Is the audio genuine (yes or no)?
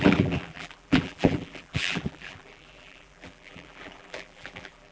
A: no